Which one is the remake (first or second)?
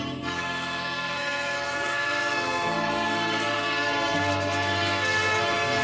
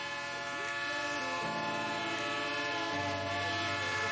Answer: first